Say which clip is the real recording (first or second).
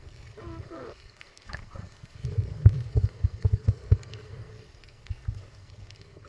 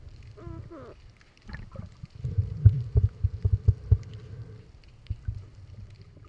second